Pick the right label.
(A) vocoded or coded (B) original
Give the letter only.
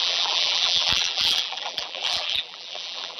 A